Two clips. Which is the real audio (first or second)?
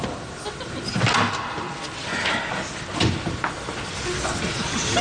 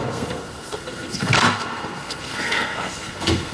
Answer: first